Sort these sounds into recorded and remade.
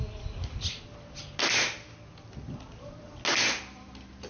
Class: recorded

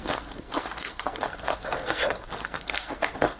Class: remade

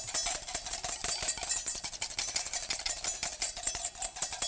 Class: recorded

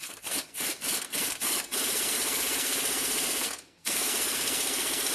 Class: remade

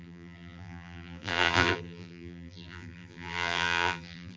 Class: remade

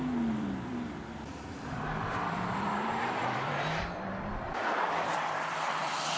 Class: remade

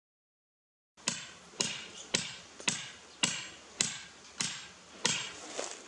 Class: recorded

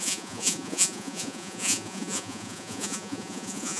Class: remade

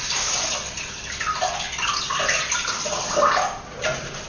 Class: recorded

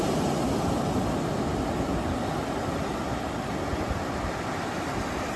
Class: recorded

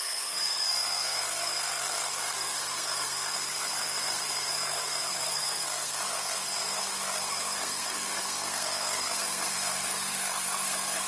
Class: remade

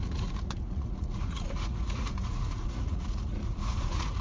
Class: remade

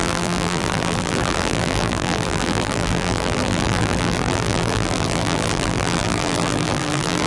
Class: remade